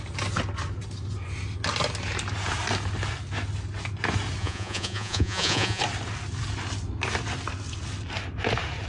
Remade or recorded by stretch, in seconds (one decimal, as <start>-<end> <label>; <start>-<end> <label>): 0.0-4.4 recorded; 4.4-5.8 remade; 5.8-8.9 recorded